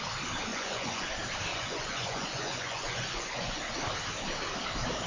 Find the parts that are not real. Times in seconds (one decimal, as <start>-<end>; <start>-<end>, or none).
0.5-1.1; 1.5-3.6